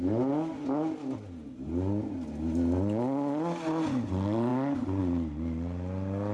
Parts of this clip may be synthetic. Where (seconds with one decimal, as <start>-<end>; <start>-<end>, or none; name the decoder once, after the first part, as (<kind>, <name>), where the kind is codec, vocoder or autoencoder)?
none

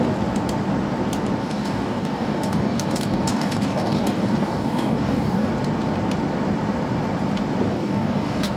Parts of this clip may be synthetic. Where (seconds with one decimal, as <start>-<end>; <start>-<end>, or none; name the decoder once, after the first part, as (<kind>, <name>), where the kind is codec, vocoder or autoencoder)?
1.4-5.5 (codec, DAC); 7.7-8.6